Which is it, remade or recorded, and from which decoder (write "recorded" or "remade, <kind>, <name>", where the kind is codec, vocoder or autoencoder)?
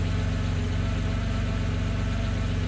recorded